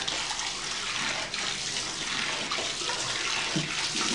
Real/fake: real